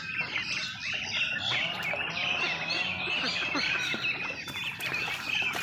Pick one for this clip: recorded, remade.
recorded